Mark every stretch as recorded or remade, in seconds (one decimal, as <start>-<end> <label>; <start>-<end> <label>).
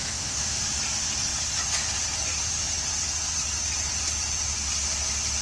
0.0-0.6 remade; 0.6-5.4 recorded